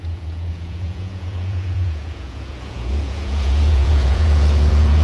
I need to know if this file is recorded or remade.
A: remade